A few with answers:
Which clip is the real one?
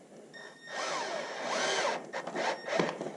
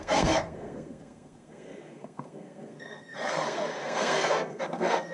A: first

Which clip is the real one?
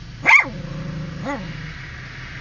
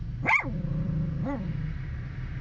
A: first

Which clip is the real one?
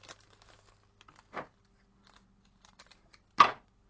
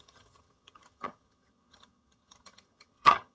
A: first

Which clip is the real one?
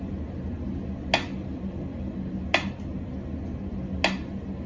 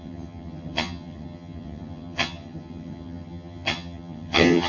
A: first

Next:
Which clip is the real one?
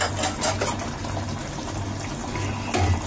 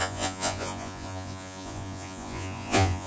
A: first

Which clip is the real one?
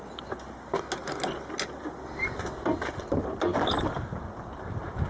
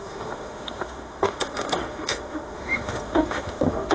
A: first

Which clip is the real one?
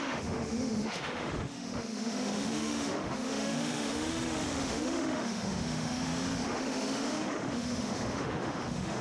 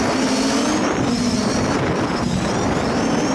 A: second